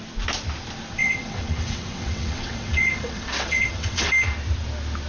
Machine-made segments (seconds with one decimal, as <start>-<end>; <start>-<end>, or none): 1.0-4.1